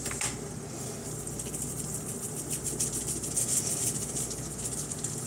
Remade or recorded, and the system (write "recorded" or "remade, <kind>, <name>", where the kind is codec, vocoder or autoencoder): recorded